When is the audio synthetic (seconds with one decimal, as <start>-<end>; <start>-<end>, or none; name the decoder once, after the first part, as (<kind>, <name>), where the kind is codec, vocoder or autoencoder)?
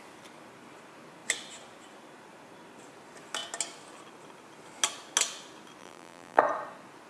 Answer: 5.8-6.4 (vocoder, BigVGAN v2)